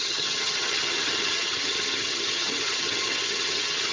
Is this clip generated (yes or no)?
yes